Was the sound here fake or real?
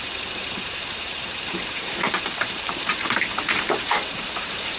fake